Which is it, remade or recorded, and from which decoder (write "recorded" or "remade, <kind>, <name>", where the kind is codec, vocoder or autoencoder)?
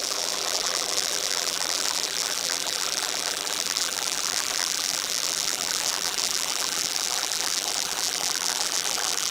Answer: remade, vocoder, BigVGAN v2